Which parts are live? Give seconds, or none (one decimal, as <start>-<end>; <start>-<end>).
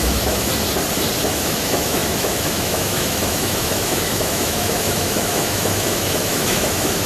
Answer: 0.5-1.2